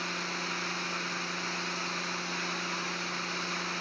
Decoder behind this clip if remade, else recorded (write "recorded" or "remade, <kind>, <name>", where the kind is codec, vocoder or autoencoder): recorded